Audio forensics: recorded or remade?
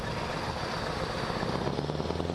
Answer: recorded